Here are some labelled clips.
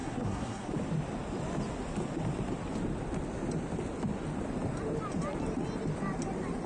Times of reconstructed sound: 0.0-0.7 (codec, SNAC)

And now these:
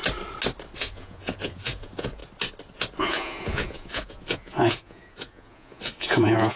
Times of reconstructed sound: 0.8-2.2 (vocoder, Vocos); 3.0-6.6

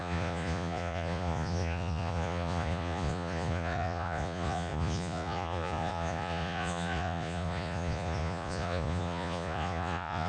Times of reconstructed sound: 0.0-10.3 (vocoder, Vocos)

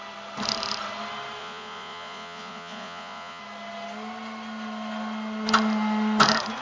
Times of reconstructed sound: 1.4-3.4 (vocoder, Vocos)